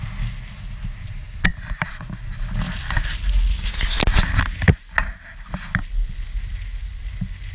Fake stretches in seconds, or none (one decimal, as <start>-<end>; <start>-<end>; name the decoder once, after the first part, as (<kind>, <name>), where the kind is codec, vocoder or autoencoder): none